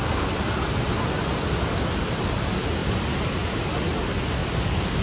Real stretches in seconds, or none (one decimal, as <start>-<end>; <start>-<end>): 0.0-4.4